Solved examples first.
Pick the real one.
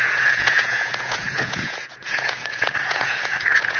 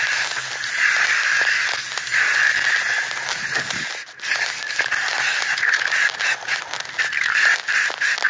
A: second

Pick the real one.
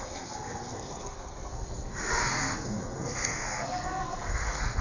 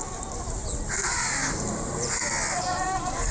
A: second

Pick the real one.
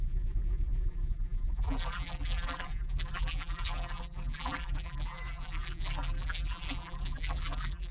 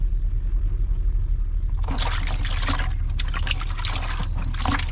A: second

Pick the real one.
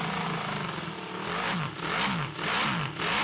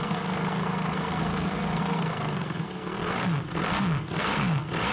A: first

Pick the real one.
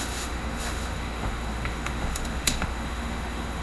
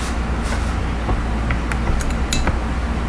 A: second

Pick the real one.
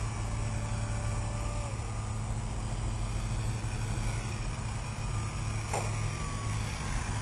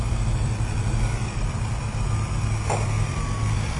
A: first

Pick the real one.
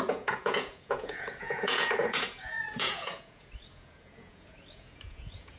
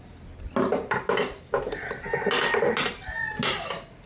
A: second